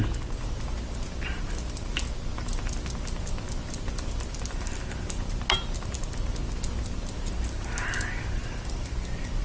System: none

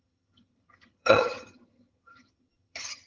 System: vocoder, HiFi-GAN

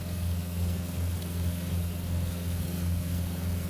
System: codec, SNAC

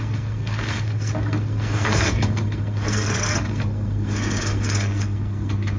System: codec, SNAC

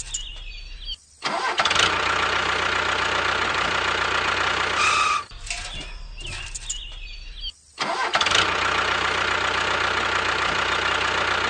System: none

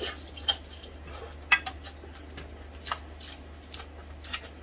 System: none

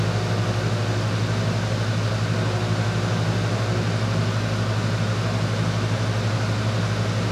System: none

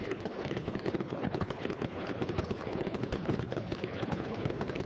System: codec, HILCodec